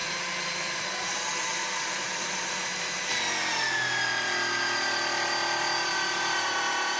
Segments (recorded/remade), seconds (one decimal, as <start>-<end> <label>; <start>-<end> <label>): 0.0-3.1 remade; 3.1-7.0 recorded